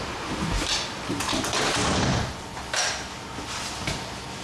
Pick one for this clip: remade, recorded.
recorded